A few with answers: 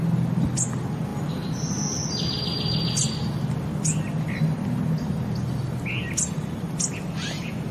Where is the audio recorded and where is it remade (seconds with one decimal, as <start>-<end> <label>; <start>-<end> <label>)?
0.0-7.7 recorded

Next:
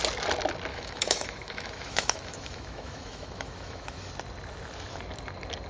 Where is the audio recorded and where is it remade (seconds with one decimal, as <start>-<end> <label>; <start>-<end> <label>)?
0.0-0.7 recorded; 0.7-4.1 remade; 4.1-5.7 recorded

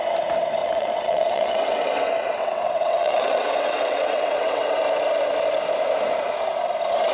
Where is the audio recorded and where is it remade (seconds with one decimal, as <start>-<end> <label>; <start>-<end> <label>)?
0.0-0.6 recorded; 0.6-4.7 remade; 4.7-7.1 recorded